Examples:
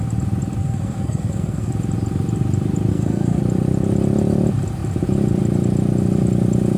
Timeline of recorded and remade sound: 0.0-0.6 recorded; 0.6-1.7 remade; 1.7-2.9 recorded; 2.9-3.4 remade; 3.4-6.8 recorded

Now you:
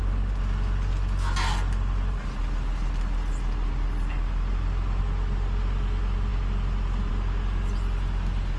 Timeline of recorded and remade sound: 0.0-8.6 recorded

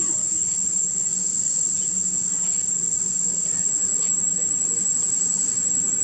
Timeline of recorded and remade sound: 0.0-6.0 recorded

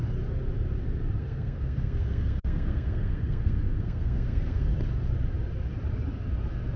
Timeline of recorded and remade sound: 0.0-1.2 recorded; 1.2-4.7 remade; 4.7-6.8 recorded

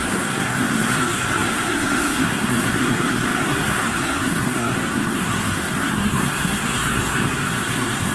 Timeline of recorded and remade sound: 0.0-8.1 remade